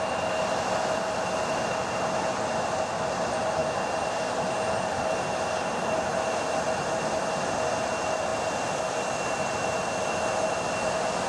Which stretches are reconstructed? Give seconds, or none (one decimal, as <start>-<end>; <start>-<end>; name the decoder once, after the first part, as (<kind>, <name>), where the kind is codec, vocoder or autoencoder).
none